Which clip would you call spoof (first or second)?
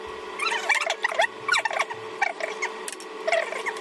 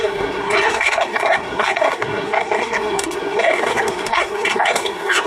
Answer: second